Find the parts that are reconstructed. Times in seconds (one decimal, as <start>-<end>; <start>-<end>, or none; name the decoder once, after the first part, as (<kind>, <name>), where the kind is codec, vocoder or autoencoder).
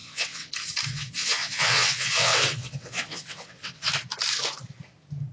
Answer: 0.0-0.5 (vocoder, WaveNeXt); 0.9-3.9